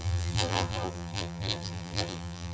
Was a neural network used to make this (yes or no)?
yes